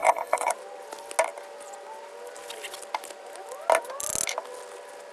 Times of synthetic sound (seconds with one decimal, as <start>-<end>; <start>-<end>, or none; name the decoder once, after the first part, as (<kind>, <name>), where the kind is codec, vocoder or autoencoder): 0.0-0.5 (codec, HILCodec)

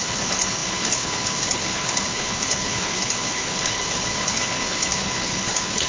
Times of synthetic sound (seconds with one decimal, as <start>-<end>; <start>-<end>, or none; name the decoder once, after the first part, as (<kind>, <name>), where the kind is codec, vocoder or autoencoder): 0.0-5.9 (codec, HILCodec)